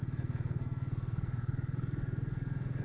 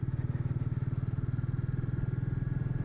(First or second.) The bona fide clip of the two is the second